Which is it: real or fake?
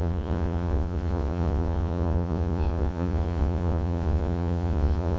fake